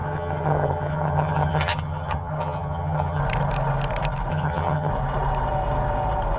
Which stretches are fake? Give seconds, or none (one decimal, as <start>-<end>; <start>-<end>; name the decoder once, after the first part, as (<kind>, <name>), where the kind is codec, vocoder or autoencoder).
0.0-3.2 (vocoder, HiFi-GAN); 4.3-4.9